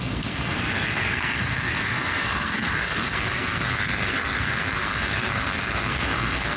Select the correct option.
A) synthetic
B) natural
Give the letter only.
A